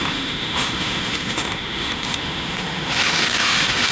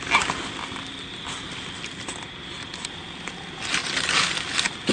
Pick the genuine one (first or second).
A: second